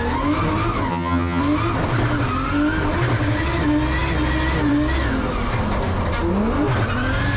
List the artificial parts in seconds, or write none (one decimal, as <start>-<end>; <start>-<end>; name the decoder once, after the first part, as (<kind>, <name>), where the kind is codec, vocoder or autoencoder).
0.9-1.4 (vocoder, HiFi-GAN)